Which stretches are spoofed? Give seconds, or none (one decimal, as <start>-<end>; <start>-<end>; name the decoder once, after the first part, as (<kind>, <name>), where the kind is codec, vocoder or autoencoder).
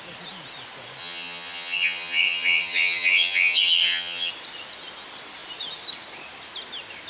1.0-4.3 (vocoder, HiFi-GAN)